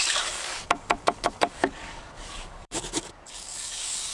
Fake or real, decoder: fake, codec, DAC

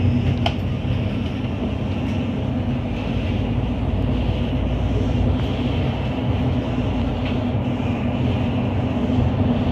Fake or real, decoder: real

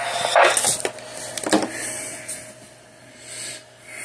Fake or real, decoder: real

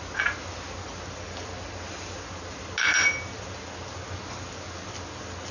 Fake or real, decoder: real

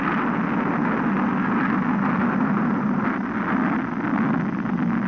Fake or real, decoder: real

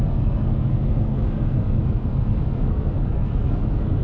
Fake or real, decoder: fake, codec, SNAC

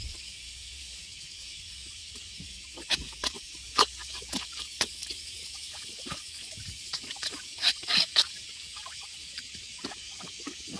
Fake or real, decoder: fake, codec, DAC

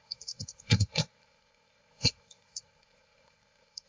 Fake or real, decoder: fake, codec, SNAC